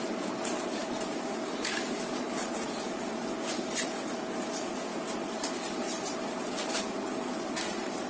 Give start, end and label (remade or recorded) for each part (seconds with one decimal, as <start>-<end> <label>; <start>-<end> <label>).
0.0-8.1 recorded